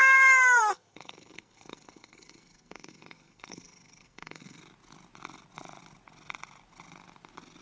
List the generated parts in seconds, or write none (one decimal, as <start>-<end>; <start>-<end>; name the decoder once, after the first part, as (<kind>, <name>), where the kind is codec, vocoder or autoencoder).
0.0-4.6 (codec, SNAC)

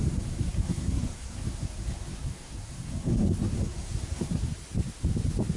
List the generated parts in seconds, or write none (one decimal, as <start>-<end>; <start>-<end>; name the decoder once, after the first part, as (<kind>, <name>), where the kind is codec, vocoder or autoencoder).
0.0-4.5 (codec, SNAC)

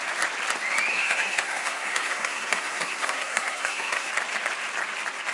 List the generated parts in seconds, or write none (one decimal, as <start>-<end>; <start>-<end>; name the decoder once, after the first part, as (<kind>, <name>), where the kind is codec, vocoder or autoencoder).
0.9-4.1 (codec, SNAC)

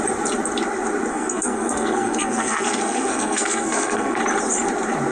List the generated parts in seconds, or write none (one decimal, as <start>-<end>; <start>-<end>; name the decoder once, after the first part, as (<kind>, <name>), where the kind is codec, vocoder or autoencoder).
1.1-4.2 (codec, SNAC)

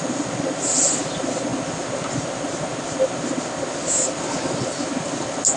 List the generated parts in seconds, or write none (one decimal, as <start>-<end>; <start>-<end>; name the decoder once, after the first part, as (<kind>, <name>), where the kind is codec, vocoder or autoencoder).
none